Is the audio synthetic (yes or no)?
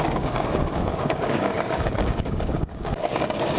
yes